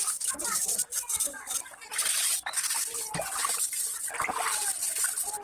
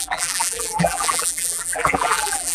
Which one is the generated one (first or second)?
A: second